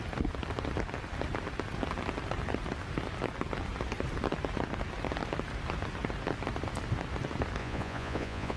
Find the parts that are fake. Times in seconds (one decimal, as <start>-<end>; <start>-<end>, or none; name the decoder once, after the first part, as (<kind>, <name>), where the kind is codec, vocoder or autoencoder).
7.6-8.6 (vocoder, Vocos)